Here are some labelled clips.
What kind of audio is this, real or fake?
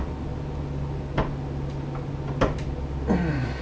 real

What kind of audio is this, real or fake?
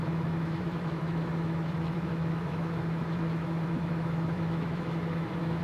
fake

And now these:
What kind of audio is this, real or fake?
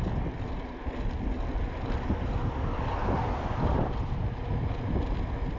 real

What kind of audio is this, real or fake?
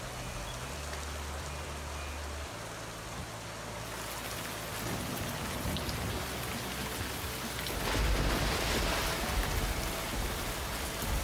real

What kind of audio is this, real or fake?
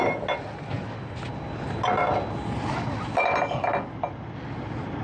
real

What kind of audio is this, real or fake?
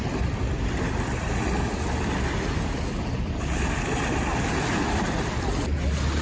real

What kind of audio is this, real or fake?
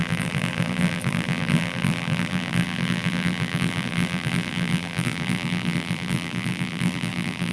fake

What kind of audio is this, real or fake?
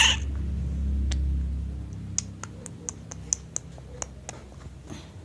real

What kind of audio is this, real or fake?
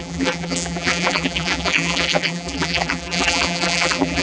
fake